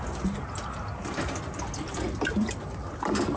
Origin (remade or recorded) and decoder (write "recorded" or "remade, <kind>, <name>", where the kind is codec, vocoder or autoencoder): recorded